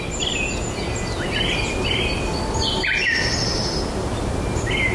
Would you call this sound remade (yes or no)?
no